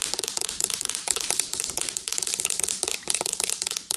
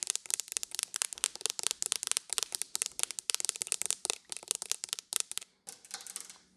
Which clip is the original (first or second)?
second